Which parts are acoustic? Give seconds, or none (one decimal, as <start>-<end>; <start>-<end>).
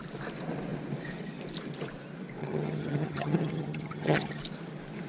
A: 0.0-2.4; 4.4-5.1